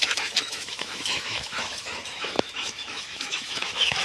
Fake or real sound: fake